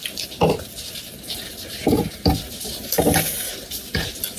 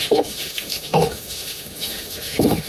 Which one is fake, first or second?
second